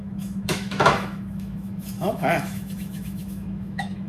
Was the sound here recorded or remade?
remade